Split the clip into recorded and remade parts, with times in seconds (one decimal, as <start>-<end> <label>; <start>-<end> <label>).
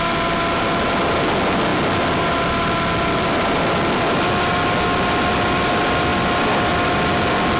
0.0-6.1 remade; 6.1-6.7 recorded; 6.7-7.6 remade